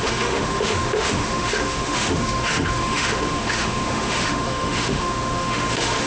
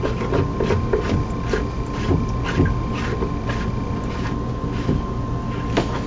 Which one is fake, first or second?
first